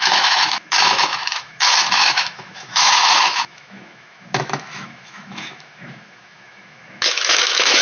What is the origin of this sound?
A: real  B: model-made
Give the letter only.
B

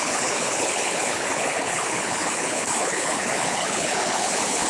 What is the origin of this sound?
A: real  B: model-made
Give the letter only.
B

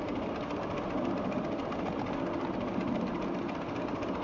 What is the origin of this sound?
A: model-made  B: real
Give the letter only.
B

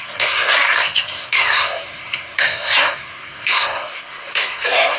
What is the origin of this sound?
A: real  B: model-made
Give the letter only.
B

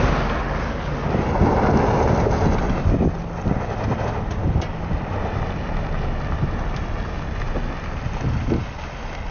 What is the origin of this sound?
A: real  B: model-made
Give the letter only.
A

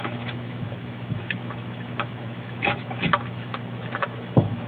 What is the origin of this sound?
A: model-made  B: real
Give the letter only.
A